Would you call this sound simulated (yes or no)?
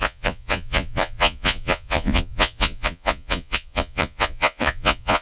yes